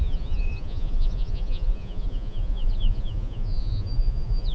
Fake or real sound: fake